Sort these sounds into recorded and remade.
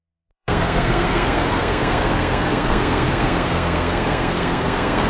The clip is remade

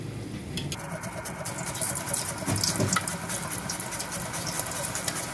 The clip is recorded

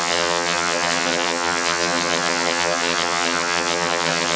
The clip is remade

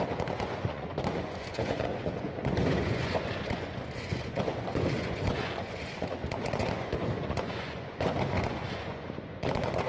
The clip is remade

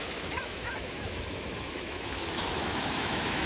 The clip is remade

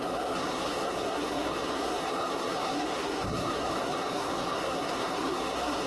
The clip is remade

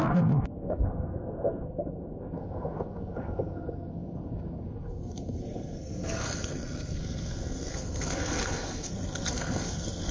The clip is remade